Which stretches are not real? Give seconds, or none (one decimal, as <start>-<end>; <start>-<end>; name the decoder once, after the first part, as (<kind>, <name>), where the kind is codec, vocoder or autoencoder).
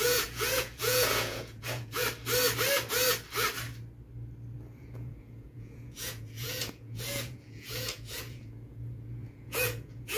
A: 0.0-2.0 (vocoder, Vocos); 4.7-10.2